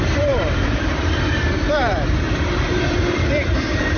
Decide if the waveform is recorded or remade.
remade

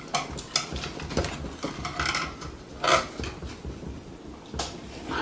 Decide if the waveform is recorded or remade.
recorded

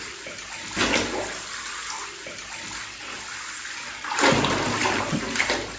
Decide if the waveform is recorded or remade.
recorded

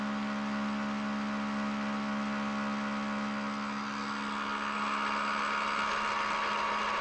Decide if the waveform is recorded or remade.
recorded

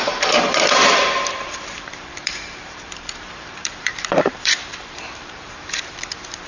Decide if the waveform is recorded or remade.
remade